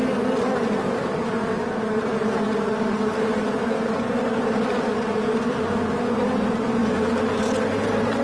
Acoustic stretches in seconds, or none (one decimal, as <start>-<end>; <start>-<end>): 0.0-6.8; 7.4-8.2